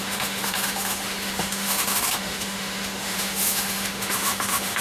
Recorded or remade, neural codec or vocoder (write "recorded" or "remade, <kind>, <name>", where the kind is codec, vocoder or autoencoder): remade, autoencoder, DAC-VAE